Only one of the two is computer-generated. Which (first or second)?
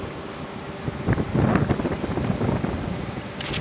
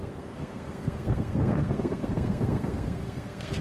second